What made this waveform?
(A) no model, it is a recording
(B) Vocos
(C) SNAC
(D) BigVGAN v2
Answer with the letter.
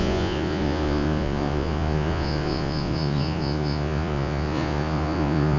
B